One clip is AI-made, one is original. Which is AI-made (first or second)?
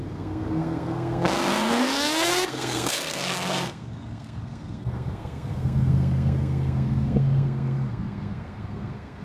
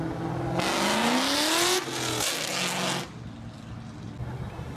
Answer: first